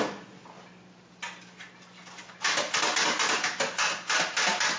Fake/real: real